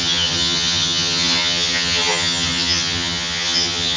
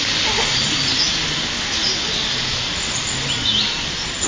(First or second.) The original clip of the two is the second